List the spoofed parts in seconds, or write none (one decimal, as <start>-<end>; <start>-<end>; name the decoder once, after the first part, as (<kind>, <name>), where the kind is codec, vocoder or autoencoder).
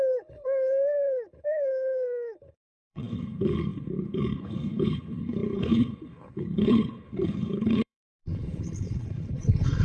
0.0-9.8 (codec, HILCodec)